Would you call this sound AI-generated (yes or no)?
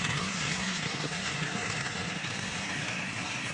yes